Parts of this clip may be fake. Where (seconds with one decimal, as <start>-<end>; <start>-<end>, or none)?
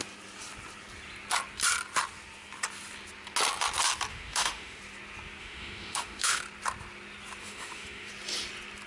4.1-4.8; 5.4-6.4; 7.4-8.1